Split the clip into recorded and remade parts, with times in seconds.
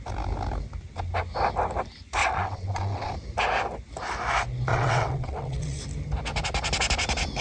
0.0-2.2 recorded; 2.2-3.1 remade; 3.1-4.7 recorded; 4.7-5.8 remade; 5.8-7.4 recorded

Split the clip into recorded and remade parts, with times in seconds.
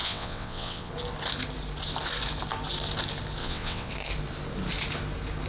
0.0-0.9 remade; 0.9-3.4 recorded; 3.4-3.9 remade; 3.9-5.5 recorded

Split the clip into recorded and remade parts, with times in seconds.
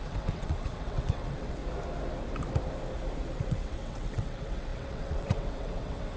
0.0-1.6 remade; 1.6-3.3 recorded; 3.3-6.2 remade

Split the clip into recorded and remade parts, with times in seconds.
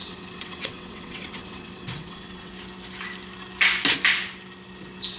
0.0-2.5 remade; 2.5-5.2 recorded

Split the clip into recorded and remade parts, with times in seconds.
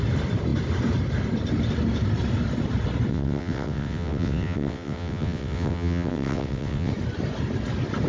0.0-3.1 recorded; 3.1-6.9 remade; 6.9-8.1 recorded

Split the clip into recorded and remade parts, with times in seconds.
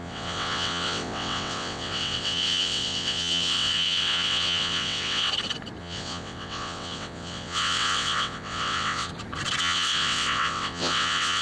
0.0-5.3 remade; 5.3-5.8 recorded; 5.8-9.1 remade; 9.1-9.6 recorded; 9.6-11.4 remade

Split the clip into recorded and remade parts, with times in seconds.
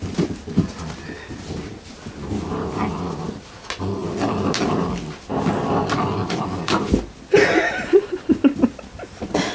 0.0-9.5 recorded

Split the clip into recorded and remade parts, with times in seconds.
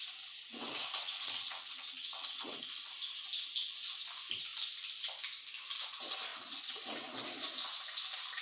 0.0-0.5 recorded; 0.5-2.6 remade; 2.6-6.3 recorded; 6.3-7.1 remade; 7.1-8.4 recorded